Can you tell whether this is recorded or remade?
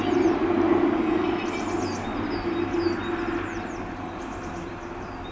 recorded